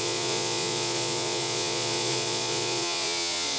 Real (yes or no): no